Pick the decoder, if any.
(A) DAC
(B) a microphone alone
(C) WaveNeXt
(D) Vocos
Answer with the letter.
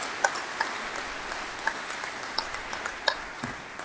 B